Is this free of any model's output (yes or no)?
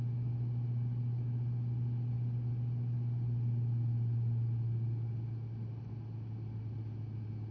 yes